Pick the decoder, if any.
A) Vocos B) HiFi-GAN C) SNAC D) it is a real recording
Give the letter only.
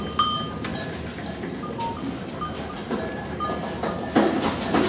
D